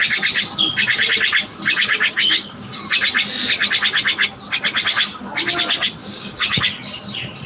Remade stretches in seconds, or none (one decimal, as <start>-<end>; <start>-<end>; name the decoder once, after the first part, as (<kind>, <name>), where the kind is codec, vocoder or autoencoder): 1.8-2.8 (codec, DAC); 6.0-6.6